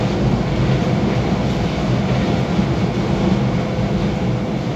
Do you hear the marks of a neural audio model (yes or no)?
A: no